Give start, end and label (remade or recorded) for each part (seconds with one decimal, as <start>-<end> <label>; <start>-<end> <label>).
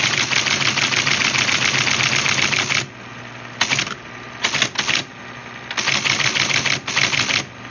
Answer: 0.0-7.7 recorded